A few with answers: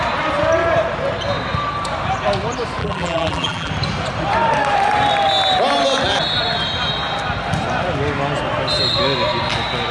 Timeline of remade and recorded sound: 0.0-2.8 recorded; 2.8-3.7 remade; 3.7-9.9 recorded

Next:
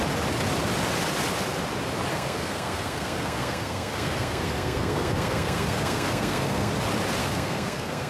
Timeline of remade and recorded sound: 0.0-2.1 recorded; 2.1-6.7 remade; 6.7-7.2 recorded; 7.2-8.1 remade

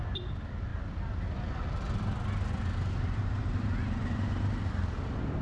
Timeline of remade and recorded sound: 0.0-5.4 recorded

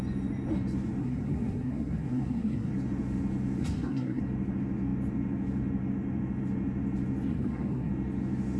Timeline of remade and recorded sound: 0.0-1.0 recorded; 1.0-2.7 remade; 2.7-3.6 recorded; 3.6-4.2 remade; 4.2-7.3 recorded; 7.3-7.9 remade; 7.9-8.6 recorded

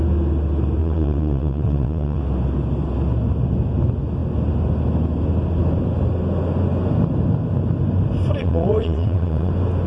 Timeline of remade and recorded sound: 0.0-0.8 recorded; 0.8-2.2 remade; 2.2-8.4 recorded; 8.4-9.5 remade; 9.5-9.9 recorded

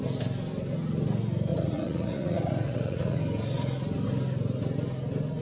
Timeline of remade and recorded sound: 0.0-1.5 recorded; 1.5-3.2 remade; 3.2-5.4 recorded

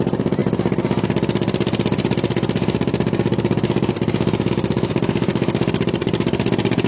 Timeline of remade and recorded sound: 0.0-6.9 recorded

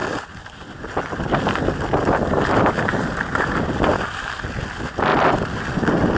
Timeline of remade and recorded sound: 0.0-6.2 recorded